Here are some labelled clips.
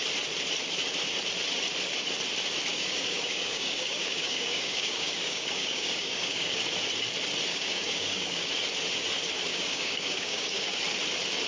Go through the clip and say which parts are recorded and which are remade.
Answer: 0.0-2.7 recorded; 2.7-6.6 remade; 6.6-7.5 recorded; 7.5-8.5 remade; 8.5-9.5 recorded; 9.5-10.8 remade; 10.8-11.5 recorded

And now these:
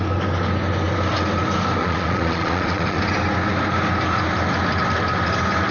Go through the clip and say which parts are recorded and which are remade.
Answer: 0.0-1.8 recorded; 1.8-3.0 remade; 3.0-5.7 recorded